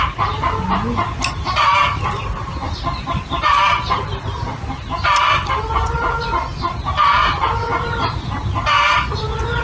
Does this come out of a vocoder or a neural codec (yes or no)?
no